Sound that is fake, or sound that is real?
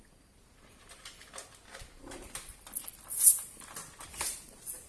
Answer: real